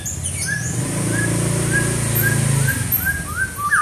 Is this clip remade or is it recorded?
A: recorded